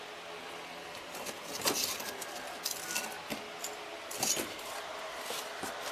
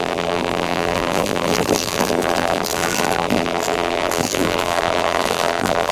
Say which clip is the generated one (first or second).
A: second